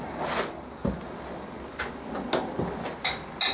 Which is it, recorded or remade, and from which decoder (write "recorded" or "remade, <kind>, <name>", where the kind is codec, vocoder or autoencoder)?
recorded